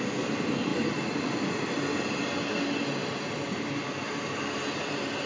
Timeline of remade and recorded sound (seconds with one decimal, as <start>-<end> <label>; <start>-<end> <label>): 0.0-3.0 recorded; 3.0-3.7 remade; 3.7-5.3 recorded